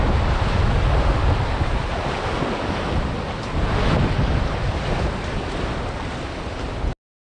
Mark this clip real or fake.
real